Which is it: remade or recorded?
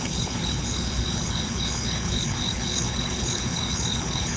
remade